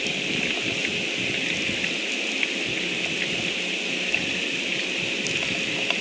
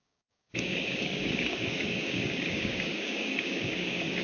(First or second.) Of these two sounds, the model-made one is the second